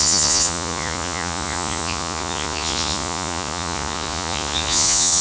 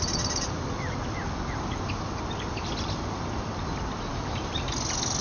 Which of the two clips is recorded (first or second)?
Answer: second